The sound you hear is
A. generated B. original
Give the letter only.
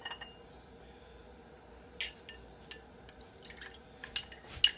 B